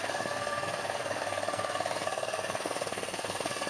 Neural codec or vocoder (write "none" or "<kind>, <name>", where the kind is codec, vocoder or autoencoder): codec, SNAC